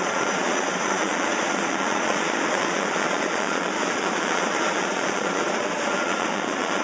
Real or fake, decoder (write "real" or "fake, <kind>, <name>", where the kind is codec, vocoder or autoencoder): fake, vocoder, Vocos